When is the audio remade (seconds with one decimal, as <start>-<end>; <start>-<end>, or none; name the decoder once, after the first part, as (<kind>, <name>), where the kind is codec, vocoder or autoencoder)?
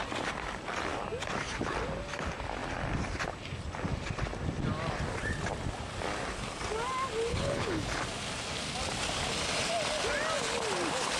7.3-8.0 (codec, HILCodec)